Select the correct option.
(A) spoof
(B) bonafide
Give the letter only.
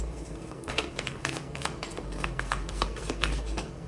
A